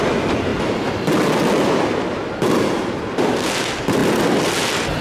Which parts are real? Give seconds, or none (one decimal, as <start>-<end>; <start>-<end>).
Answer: 0.0-5.0